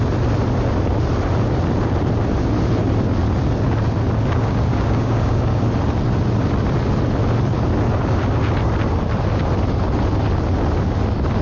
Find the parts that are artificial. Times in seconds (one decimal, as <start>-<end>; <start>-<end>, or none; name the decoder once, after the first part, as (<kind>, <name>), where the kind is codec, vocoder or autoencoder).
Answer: 4.4-5.6 (codec, DAC)